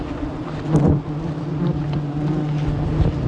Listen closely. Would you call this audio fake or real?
real